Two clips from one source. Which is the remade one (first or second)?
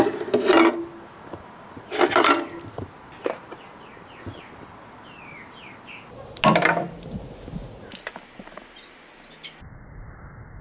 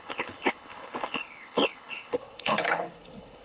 second